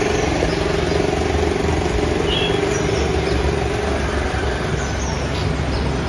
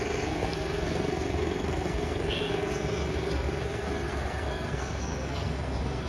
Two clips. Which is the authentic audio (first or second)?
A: first